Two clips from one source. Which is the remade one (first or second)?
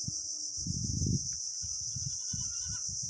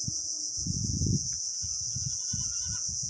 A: second